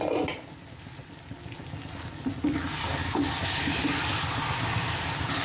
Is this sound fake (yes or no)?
no